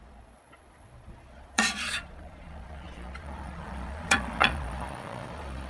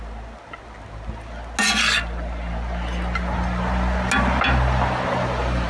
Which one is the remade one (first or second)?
first